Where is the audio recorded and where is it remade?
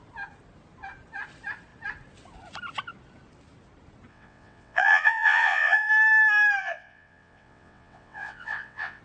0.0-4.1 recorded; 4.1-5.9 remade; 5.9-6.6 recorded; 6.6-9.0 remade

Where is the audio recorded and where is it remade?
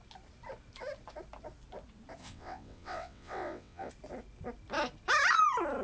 0.0-2.2 recorded; 2.2-3.9 remade; 3.9-5.8 recorded